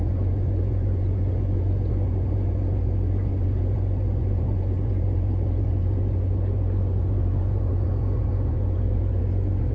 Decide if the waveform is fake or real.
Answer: fake